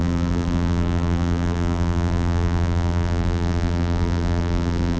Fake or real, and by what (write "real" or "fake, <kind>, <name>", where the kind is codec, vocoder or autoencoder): fake, vocoder, BigVGAN v2